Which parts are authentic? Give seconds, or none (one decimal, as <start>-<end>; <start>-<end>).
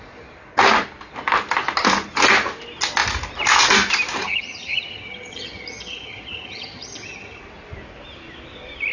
0.0-4.2; 7.4-8.9